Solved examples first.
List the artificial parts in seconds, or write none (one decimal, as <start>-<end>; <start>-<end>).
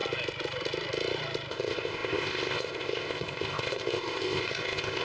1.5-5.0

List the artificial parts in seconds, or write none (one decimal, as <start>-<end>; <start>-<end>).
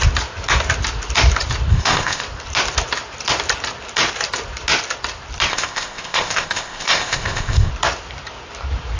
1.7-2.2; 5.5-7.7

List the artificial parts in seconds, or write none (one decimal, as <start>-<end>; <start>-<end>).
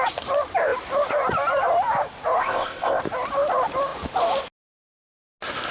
2.4-3.0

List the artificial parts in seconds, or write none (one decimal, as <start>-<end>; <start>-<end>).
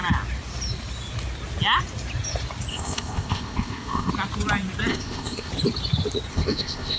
2.7-4.1; 4.9-5.5; 6.3-7.0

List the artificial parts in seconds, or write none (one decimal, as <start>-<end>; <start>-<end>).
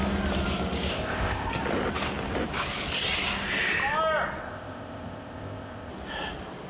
0.9-1.5; 4.4-5.9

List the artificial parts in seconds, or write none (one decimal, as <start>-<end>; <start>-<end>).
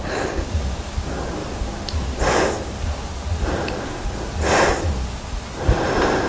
none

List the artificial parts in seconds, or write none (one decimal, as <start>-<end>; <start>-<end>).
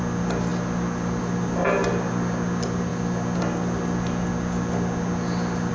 none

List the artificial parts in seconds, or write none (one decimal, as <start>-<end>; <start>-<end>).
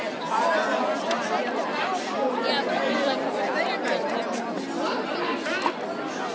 none